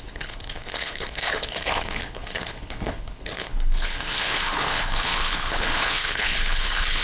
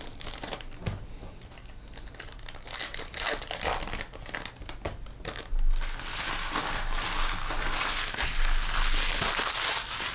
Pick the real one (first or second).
second